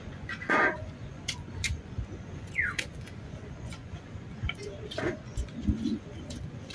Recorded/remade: remade